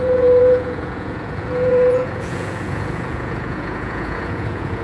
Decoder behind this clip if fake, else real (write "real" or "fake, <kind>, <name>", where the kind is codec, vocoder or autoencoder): fake, vocoder, Vocos